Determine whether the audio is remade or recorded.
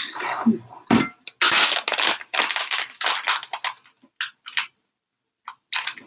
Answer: recorded